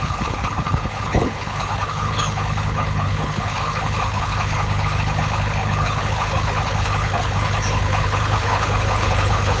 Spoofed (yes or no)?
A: yes